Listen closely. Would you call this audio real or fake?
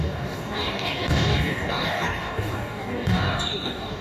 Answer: fake